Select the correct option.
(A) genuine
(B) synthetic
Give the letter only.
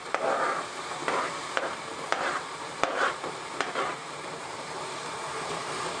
B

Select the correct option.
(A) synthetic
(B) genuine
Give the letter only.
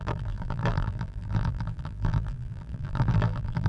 A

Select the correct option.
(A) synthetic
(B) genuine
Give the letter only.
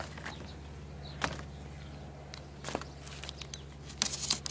B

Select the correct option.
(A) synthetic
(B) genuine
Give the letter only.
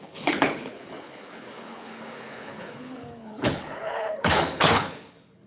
A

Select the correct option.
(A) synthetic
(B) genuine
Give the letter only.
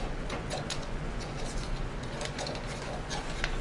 A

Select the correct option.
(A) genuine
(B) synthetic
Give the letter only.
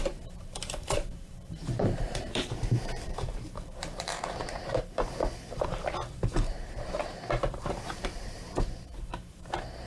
B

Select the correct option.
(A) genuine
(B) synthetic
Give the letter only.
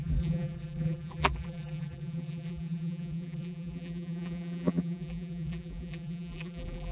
B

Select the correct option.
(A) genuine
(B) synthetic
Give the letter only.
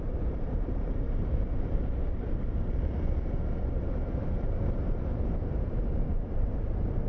B